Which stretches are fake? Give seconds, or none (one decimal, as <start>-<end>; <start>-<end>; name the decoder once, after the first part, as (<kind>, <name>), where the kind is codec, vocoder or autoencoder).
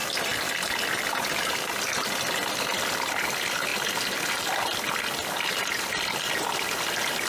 none